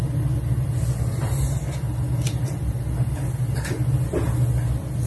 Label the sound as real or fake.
real